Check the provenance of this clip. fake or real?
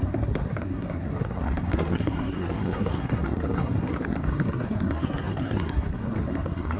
fake